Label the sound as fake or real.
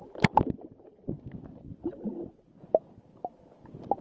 real